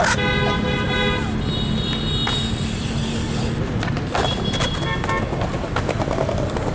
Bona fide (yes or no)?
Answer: yes